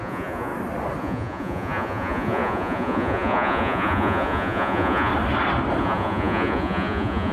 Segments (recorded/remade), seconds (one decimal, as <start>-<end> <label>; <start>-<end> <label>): 0.0-0.5 remade; 0.5-1.0 recorded; 1.0-5.1 remade; 5.1-5.8 recorded; 5.8-7.3 remade